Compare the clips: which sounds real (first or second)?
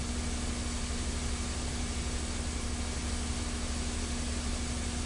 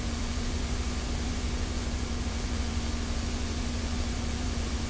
first